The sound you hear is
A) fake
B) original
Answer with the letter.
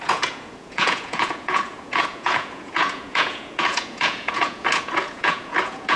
A